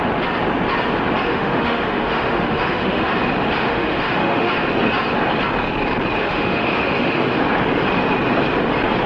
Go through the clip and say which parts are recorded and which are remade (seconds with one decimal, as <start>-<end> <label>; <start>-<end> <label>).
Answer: 0.0-1.3 recorded; 1.3-3.1 remade; 3.1-3.6 recorded; 3.6-4.5 remade; 4.5-6.2 recorded; 6.2-7.4 remade; 7.4-9.1 recorded